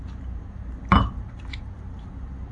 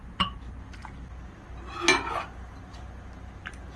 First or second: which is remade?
first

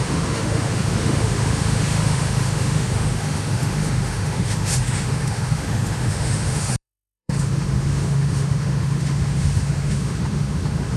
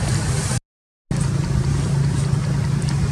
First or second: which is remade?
first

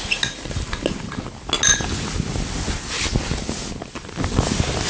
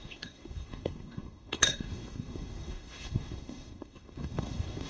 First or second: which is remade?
second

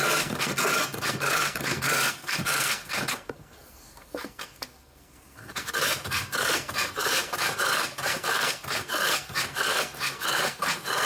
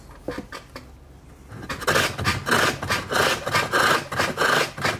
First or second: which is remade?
first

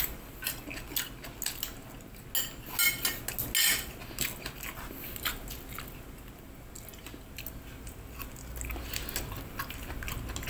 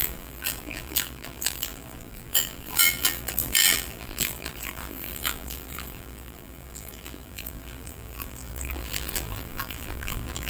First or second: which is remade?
second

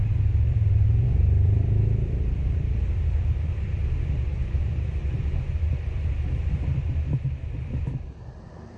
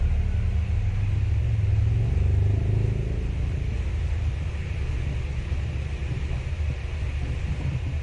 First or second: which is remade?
first